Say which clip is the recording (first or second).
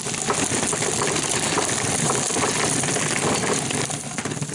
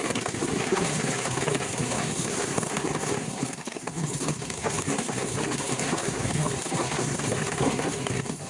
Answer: first